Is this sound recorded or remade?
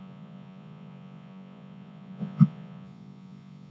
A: remade